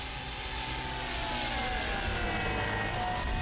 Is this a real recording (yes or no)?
yes